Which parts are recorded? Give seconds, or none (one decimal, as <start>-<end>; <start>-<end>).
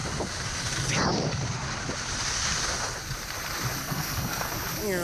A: 0.0-3.8; 4.5-5.0